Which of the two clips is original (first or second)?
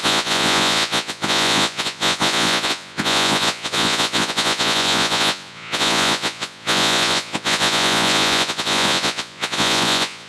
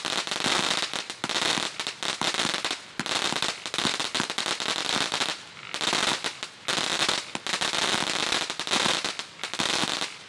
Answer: second